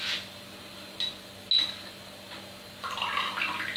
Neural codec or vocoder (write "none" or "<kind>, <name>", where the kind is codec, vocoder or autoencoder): none